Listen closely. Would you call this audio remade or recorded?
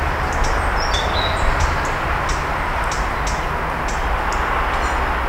recorded